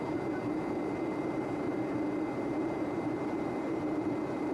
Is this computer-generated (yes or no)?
yes